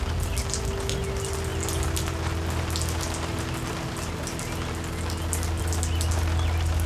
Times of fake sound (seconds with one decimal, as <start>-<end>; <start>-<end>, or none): none